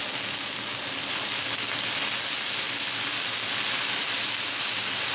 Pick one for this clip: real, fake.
real